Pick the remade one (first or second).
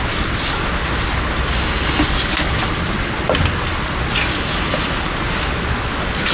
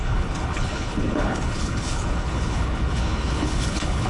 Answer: second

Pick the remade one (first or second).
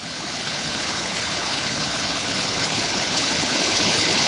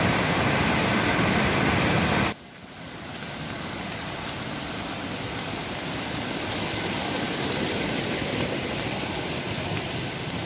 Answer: first